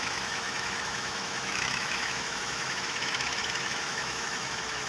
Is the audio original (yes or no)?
no